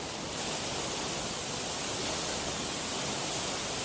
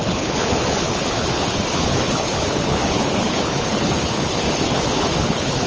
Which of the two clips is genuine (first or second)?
first